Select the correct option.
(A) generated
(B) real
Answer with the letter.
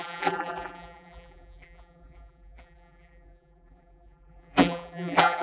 A